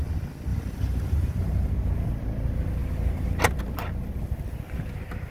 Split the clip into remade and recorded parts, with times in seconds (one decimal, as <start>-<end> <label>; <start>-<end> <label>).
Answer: 0.0-0.5 recorded; 0.5-1.7 remade; 1.7-5.3 recorded